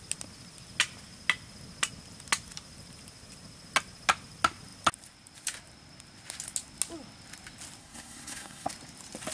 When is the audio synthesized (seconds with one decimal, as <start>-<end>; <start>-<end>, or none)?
7.8-8.7